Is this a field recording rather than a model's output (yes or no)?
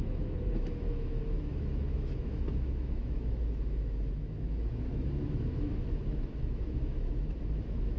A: no